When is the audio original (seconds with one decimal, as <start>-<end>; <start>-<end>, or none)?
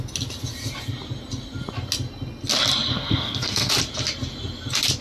0.0-2.9; 3.7-5.0